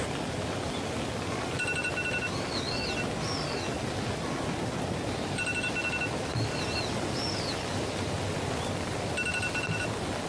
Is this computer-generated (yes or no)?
no